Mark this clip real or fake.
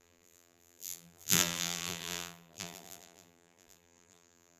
fake